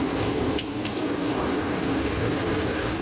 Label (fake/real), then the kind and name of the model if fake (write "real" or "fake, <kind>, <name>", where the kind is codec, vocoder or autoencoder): fake, codec, DAC